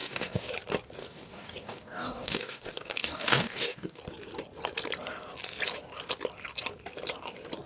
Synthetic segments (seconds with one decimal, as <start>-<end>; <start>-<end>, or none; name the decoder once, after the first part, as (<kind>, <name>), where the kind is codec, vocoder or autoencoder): 0.0-0.5 (codec, DAC); 1.0-4.0